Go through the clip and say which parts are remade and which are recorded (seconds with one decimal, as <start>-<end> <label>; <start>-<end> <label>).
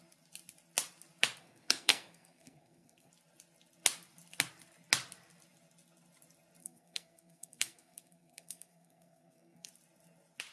0.0-1.4 recorded; 1.4-3.1 remade; 3.1-6.6 recorded; 6.6-9.7 remade; 9.7-10.5 recorded